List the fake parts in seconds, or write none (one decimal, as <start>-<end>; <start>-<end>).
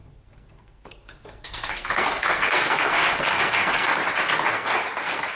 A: 0.0-4.0; 4.5-5.4